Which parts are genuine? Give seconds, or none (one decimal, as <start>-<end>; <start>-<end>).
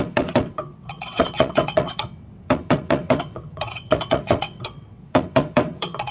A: none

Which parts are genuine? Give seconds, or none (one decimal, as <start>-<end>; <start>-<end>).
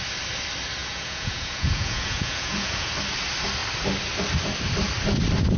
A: 0.0-0.8; 2.9-5.6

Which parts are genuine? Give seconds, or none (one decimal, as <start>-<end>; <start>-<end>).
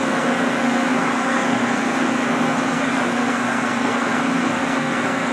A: none